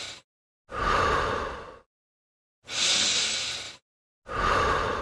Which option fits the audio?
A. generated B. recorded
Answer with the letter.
B